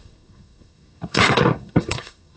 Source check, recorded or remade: remade